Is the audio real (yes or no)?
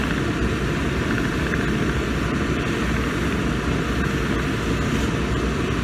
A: yes